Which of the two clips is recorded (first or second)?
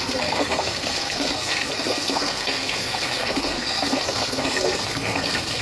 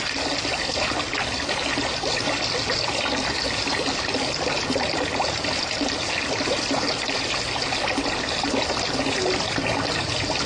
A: second